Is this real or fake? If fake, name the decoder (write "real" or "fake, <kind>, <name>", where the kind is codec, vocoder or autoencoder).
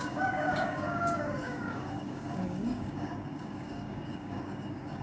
fake, codec, DAC